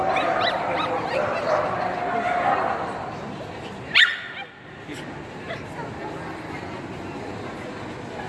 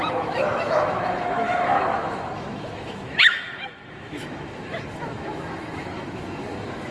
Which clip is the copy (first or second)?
second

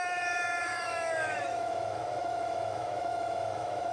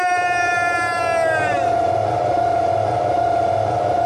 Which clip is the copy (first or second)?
first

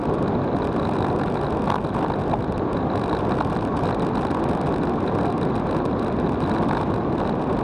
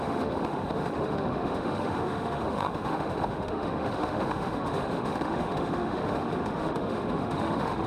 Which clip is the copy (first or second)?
second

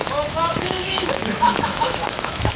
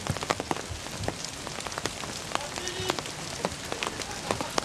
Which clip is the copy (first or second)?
first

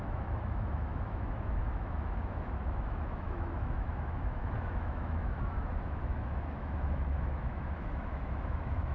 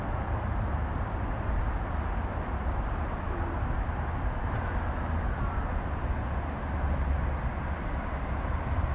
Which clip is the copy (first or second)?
first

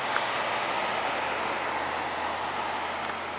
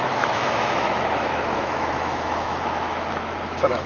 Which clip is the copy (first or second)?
second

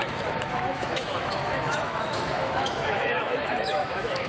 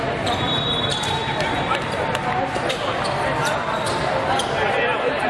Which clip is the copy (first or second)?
first